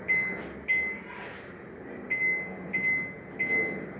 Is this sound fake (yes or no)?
no